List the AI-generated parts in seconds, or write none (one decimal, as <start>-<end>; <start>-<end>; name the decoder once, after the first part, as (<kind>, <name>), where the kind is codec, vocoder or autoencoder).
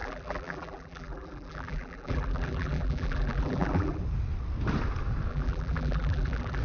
0.0-4.0 (vocoder, BigVGAN v2); 5.3-6.6